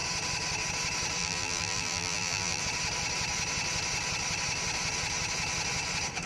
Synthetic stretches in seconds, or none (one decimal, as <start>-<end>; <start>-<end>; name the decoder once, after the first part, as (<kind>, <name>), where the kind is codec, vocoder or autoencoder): 1.2-2.6 (vocoder, BigVGAN v2)